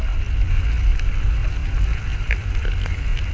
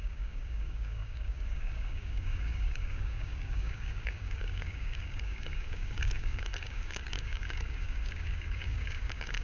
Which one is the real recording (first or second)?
first